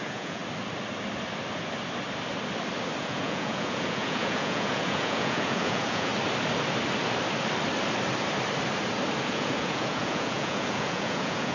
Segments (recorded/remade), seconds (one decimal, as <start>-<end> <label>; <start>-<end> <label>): 0.0-0.4 remade; 0.4-3.0 recorded; 3.0-6.1 remade; 6.1-9.2 recorded; 9.2-11.5 remade